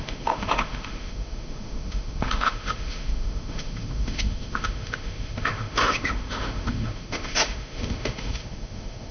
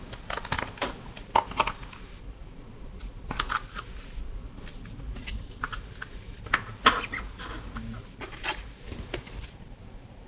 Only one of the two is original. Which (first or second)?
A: second